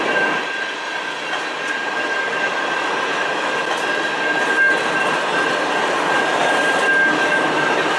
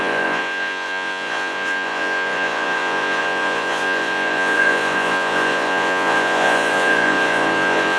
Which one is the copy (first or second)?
second